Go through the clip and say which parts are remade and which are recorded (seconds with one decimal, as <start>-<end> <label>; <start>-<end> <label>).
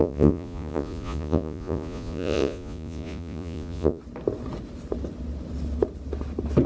0.0-4.0 remade; 4.0-6.7 recorded